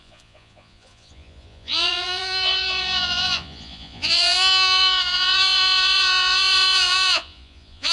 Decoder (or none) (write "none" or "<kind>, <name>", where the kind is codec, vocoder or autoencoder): vocoder, Vocos